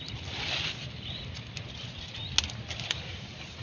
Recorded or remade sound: recorded